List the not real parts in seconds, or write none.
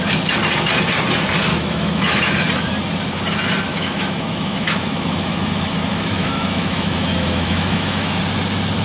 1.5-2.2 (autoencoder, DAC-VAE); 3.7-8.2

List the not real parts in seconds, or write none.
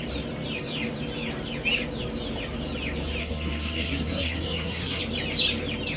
3.2-5.0 (codec, SNAC)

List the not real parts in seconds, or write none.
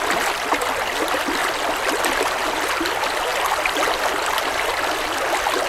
3.3-4.0 (vocoder, BigVGAN v2)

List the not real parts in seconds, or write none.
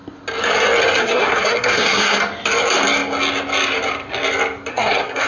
1.0-2.2 (codec, SNAC); 4.7-5.3